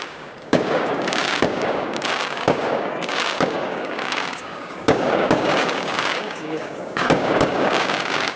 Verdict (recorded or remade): remade